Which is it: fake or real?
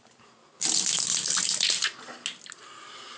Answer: real